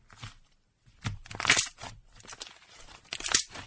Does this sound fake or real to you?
real